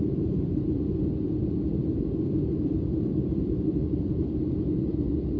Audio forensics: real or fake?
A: real